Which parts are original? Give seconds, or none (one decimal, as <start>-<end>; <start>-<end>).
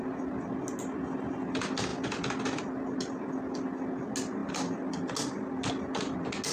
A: 0.0-6.5